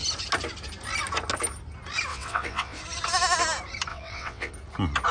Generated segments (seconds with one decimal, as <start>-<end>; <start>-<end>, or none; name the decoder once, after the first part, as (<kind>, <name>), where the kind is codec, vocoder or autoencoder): 2.1-2.8 (vocoder, WaveNeXt); 3.9-4.5